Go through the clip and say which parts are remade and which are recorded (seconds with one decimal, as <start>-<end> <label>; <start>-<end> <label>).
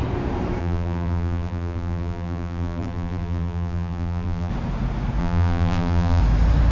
0.0-0.6 recorded; 0.6-4.5 remade; 4.5-5.2 recorded; 5.2-6.2 remade; 6.2-6.7 recorded